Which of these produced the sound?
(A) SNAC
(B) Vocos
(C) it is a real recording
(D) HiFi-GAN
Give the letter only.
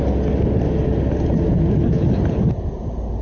C